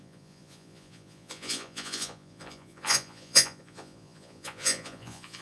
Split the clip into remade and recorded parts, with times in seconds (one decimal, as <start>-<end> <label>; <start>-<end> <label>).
0.0-5.4 remade